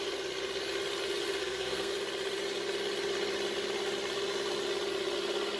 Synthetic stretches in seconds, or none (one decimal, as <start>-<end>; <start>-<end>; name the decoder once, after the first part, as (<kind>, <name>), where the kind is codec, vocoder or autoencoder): 1.4-1.9 (codec, SNAC)